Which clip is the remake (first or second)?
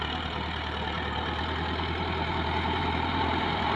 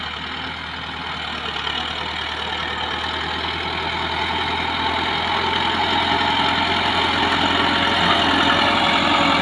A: first